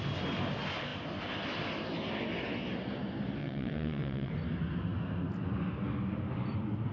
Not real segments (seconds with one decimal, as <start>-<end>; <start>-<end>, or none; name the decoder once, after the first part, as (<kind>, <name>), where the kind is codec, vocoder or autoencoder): 3.4-4.3 (vocoder, WaveNeXt)